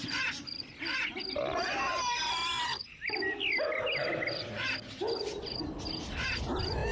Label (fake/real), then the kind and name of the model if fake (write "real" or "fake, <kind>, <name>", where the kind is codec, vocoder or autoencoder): real